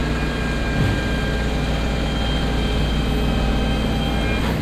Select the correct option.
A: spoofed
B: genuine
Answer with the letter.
B